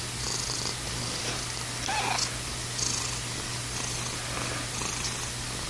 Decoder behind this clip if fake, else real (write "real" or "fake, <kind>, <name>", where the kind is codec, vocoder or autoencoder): real